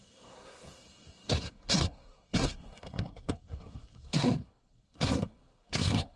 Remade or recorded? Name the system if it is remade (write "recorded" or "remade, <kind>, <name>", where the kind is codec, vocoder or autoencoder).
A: remade, codec, SNAC